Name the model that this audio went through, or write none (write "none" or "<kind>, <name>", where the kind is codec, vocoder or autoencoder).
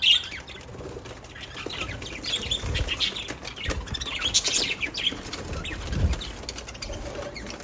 none